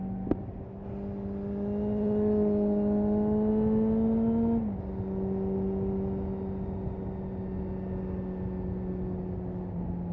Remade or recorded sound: recorded